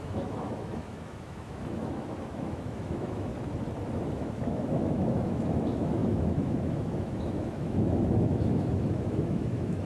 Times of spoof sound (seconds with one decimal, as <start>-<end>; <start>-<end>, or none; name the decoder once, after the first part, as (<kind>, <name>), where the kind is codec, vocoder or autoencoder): 0.0-3.3 (autoencoder, DAC-VAE); 4.1-9.8